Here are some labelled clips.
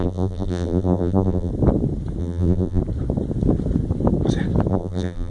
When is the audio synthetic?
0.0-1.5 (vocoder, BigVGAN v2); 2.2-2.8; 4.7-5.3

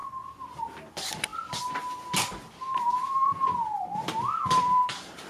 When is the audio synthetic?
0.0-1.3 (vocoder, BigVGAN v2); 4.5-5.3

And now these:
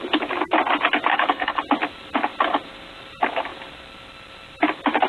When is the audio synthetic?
1.1-1.6 (codec, HILCodec)

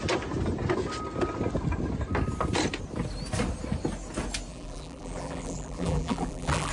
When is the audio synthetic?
4.5-6.7 (vocoder, BigVGAN v2)

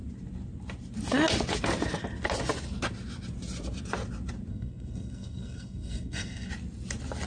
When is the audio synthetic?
4.5-6.5 (codec, SNAC)